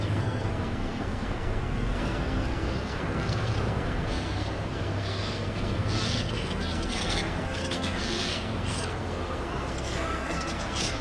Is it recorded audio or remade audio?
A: remade